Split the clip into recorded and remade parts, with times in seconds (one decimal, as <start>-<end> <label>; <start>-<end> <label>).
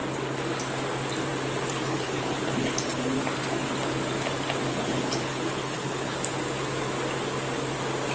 0.0-1.9 recorded; 1.9-3.2 remade; 3.2-4.7 recorded; 4.7-6.2 remade; 6.2-8.1 recorded